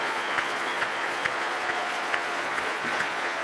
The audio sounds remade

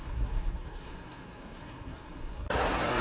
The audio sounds remade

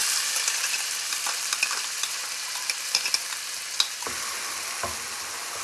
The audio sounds recorded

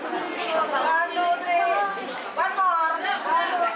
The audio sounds recorded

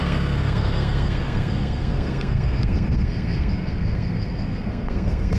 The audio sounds remade